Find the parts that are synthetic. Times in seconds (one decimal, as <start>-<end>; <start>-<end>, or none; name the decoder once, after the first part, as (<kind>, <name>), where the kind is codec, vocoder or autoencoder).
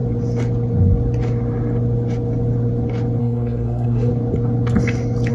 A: 3.2-4.1 (codec, SNAC)